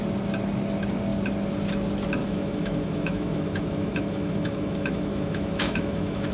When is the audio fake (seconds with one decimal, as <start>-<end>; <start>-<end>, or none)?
2.2-6.3